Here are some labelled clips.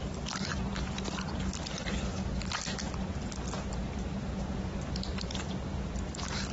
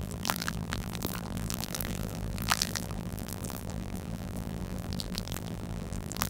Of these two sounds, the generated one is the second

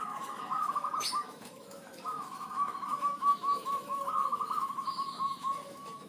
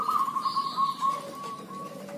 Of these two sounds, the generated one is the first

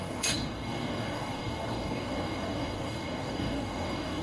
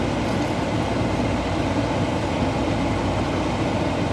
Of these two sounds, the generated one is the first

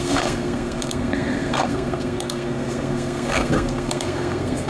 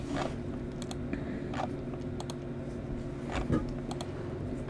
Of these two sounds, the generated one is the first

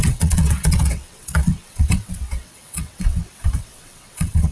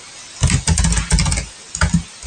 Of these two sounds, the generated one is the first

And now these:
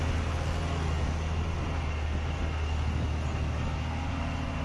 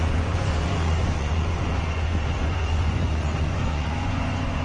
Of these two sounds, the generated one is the second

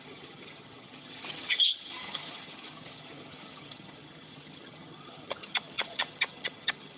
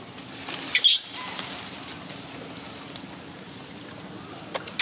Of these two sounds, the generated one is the first